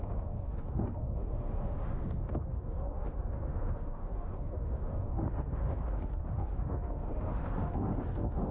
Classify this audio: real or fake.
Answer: fake